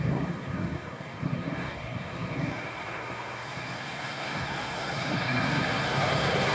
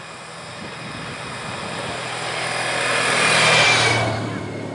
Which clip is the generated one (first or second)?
first